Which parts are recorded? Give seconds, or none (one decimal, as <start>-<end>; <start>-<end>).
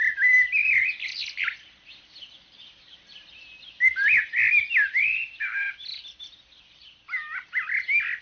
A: 0.0-8.2